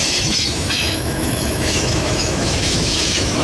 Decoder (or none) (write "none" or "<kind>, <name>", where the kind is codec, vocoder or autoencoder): autoencoder, DAC-VAE